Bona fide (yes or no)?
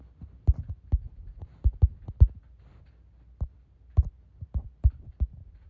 yes